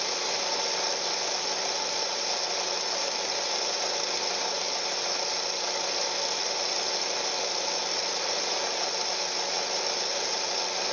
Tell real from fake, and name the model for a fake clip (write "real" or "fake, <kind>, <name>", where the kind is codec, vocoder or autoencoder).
real